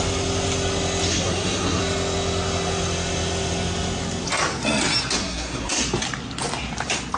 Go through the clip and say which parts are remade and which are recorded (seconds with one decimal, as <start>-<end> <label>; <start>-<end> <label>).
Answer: 0.0-1.1 recorded; 1.1-1.8 remade; 1.8-5.2 recorded; 5.2-5.8 remade; 5.8-7.2 recorded